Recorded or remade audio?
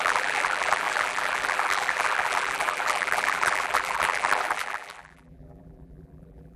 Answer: remade